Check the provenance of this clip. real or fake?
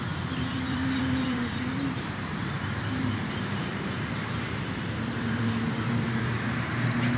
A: fake